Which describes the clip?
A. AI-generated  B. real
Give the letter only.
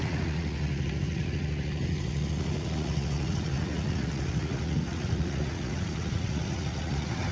A